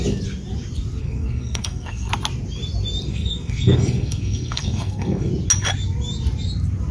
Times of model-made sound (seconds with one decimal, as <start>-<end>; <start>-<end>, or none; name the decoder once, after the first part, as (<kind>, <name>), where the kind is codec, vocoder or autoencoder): 1.0-2.1 (codec, SNAC); 3.1-5.3

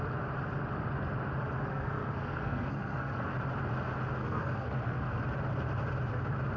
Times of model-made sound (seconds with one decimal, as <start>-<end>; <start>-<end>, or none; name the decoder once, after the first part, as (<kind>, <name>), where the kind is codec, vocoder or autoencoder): 1.7-3.2 (codec, SNAC); 4.2-5.2

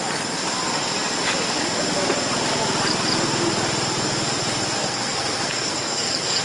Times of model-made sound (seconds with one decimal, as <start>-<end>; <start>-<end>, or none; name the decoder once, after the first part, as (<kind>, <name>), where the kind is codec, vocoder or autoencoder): 4.8-6.4 (codec, SNAC)

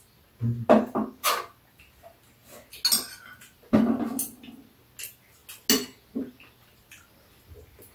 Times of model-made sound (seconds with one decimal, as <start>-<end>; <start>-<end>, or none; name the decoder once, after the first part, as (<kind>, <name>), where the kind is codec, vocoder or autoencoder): none

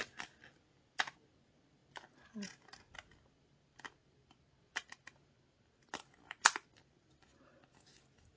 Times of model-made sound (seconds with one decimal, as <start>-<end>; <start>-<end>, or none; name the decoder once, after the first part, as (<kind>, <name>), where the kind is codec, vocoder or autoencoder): none

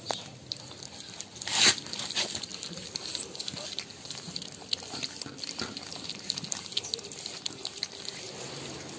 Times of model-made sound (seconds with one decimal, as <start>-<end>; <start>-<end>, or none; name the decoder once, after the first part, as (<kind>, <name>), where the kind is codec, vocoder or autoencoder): none